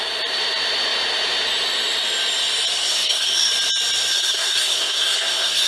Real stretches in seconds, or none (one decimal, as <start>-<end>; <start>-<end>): 0.0-2.7; 3.5-4.1